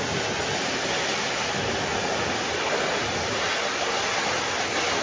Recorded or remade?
recorded